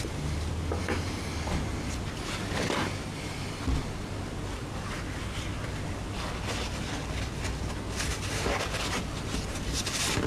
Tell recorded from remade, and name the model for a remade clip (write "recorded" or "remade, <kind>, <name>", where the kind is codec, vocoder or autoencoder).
recorded